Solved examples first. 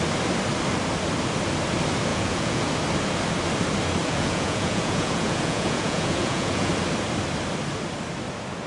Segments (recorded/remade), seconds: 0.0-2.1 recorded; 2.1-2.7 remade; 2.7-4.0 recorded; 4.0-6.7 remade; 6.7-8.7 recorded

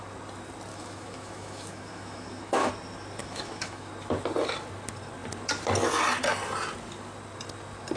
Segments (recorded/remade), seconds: 0.0-0.7 recorded; 0.7-2.7 remade; 2.7-3.2 recorded; 3.2-3.9 remade; 3.9-8.0 recorded

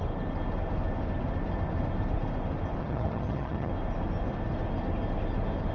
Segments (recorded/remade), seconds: 0.0-2.8 recorded; 2.8-3.7 remade; 3.7-5.7 recorded

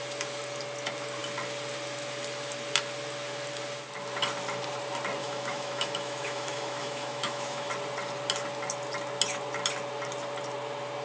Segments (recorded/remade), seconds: 0.0-5.2 recorded; 5.2-7.7 remade; 7.7-11.0 recorded

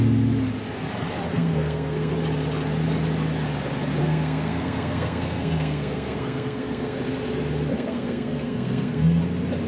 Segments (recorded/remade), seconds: 0.0-1.3 recorded; 1.3-2.1 remade; 2.1-4.0 recorded; 4.0-7.0 remade; 7.0-7.7 recorded; 7.7-9.2 remade; 9.2-9.7 recorded

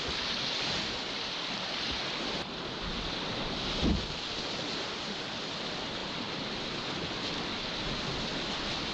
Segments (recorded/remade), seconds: 0.0-8.9 recorded